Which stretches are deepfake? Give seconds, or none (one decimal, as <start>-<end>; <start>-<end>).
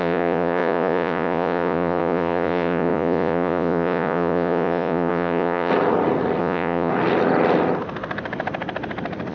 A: 0.0-5.7; 6.4-6.9